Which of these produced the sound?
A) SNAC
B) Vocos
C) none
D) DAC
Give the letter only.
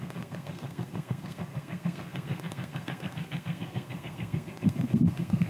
A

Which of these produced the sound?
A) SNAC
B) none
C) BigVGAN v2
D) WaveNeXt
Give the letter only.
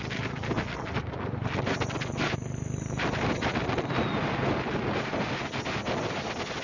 B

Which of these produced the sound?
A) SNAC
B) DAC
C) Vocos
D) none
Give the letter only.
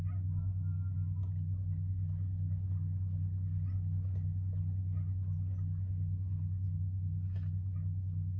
D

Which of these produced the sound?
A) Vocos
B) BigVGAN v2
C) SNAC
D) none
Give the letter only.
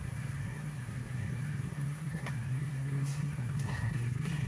C